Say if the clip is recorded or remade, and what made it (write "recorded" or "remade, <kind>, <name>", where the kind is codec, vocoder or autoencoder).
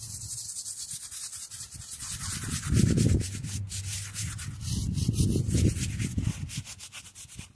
recorded